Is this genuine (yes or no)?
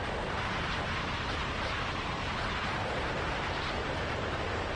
no